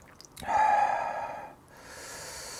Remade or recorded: recorded